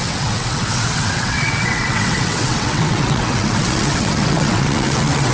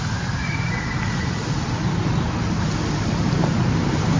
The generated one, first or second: first